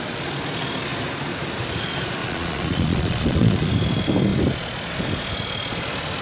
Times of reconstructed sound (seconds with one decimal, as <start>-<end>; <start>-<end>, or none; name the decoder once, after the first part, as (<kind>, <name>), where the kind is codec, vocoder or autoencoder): 2.2-3.7 (vocoder, Vocos)